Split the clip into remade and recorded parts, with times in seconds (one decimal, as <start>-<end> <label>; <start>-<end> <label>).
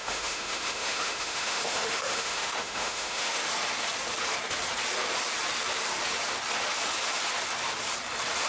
0.0-3.4 remade; 3.4-8.5 recorded